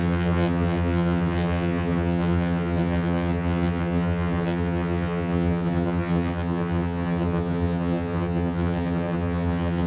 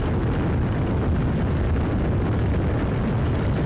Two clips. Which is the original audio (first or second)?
second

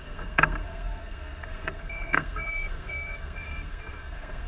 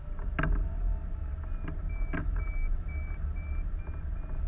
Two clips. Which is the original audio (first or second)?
second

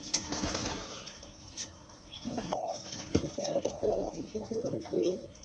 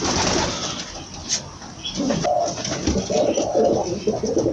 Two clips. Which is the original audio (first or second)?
second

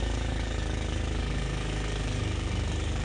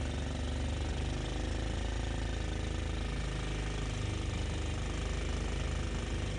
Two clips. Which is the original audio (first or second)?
second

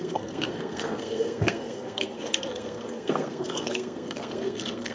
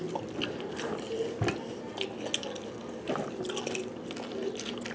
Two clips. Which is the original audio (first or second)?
second